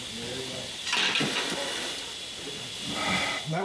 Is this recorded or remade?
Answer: recorded